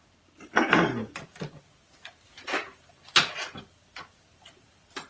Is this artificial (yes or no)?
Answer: yes